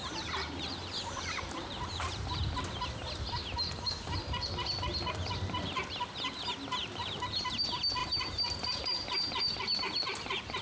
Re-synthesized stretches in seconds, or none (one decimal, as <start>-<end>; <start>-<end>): 0.0-2.4; 6.8-10.6